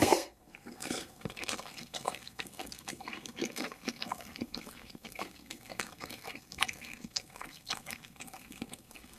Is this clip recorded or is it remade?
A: remade